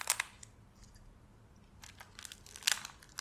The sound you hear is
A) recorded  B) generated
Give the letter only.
A